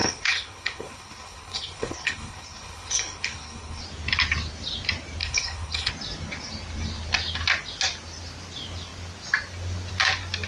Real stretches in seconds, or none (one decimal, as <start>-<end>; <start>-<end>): 3.8-5.2; 5.9-10.5